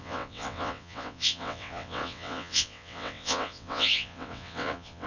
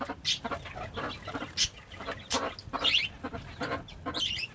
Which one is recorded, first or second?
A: second